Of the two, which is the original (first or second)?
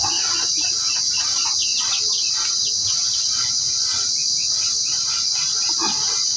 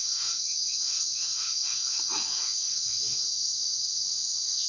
first